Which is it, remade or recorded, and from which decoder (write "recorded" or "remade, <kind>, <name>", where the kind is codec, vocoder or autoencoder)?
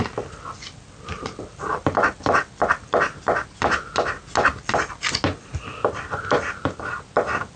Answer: recorded